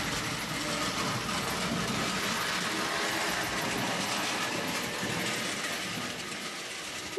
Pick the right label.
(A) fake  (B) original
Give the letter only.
B